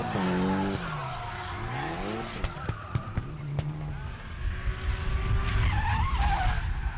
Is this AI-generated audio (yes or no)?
no